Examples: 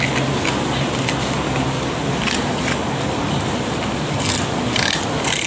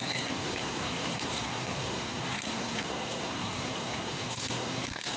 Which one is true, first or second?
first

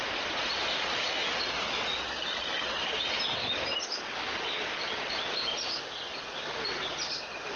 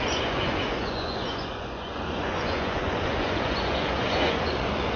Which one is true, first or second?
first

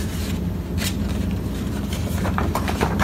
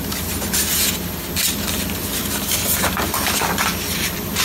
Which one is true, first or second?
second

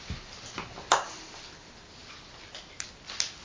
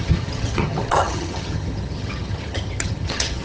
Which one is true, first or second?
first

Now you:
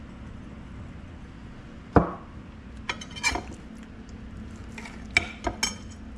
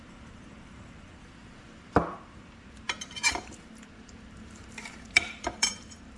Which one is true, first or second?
first